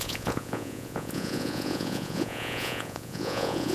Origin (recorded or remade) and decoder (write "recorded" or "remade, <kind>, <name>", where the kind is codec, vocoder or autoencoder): remade, vocoder, Vocos